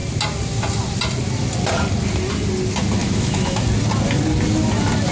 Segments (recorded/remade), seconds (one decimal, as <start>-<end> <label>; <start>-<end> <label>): 0.0-3.0 recorded; 3.0-3.6 remade; 3.6-5.1 recorded